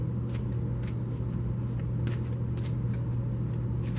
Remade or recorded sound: recorded